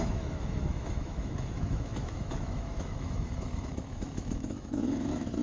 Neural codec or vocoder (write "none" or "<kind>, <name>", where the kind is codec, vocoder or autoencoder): autoencoder, DAC-VAE